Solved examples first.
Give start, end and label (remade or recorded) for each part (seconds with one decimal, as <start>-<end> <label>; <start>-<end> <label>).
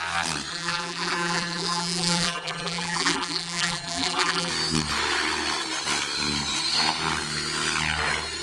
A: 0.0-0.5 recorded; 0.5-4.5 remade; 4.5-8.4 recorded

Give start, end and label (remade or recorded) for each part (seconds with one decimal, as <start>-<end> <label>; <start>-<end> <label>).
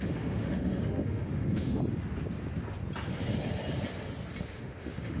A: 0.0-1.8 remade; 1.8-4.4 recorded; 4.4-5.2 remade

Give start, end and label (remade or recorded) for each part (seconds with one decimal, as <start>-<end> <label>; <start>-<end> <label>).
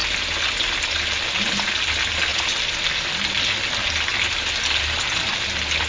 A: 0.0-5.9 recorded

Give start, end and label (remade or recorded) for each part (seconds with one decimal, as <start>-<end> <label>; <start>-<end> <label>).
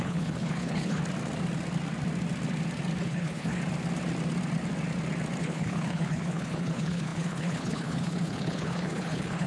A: 0.0-1.0 remade; 1.0-3.0 recorded; 3.0-3.6 remade; 3.6-5.4 recorded; 5.4-9.5 remade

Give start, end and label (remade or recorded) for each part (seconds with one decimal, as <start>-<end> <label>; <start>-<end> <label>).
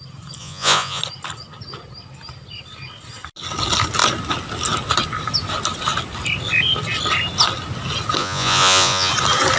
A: 0.0-0.4 recorded; 0.4-1.0 remade; 1.0-8.2 recorded; 8.2-9.1 remade; 9.1-9.6 recorded